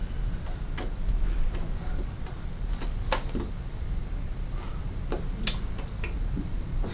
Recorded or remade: recorded